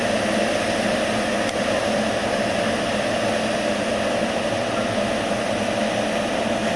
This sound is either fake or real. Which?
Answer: real